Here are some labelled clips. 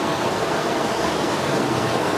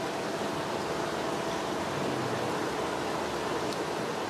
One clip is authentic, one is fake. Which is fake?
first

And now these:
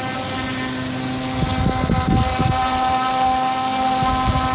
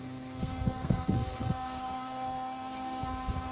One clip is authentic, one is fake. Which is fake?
second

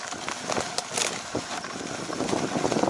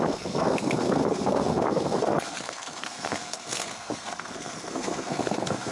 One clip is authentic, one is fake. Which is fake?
second